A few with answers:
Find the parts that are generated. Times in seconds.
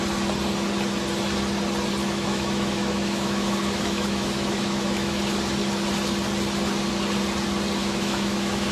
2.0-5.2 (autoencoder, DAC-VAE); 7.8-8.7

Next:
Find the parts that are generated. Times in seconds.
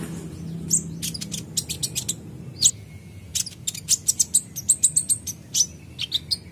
none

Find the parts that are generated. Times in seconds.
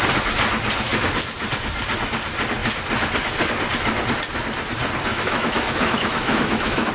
5.1-6.9 (autoencoder, DAC-VAE)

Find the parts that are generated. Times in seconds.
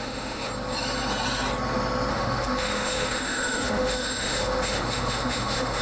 0.0-0.5 (autoencoder, DAC-VAE); 2.1-5.8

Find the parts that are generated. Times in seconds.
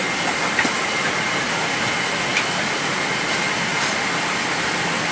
none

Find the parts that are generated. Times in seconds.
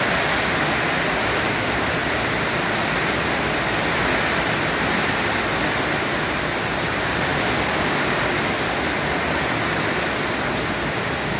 none